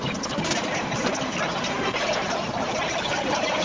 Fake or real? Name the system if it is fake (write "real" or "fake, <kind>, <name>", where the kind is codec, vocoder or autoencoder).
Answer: fake, vocoder, BigVGAN v2